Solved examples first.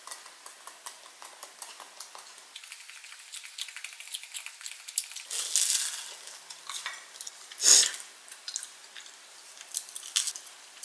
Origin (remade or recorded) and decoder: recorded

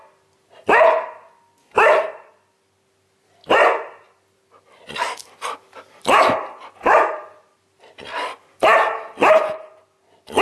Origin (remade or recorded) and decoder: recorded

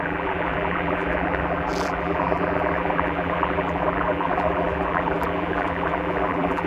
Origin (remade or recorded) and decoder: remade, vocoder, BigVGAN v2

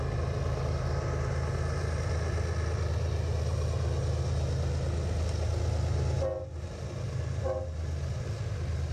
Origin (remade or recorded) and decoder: recorded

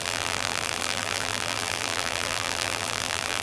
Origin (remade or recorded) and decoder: remade, vocoder, BigVGAN v2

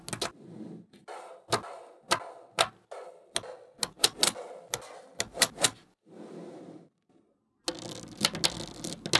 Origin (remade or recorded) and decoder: recorded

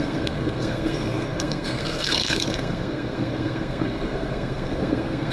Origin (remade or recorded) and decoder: remade, codec, SNAC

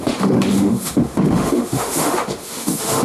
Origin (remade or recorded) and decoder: remade, autoencoder, DAC-VAE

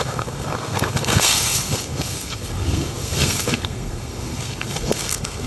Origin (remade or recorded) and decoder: remade, codec, SNAC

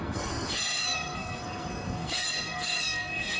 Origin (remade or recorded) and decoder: remade, codec, SNAC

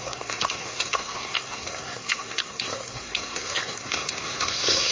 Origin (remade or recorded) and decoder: remade, codec, SNAC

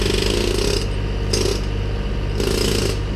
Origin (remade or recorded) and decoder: recorded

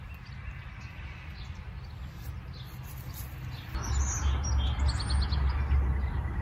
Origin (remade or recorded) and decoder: recorded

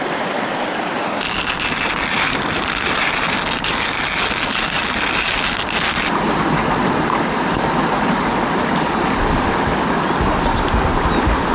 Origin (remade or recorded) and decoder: recorded